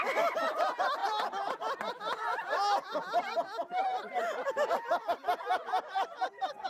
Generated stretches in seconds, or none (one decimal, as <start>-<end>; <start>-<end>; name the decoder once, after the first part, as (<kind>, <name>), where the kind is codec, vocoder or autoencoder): none